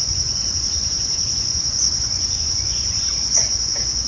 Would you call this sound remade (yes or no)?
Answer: yes